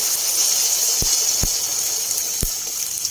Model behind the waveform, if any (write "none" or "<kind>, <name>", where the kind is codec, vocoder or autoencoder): vocoder, BigVGAN v2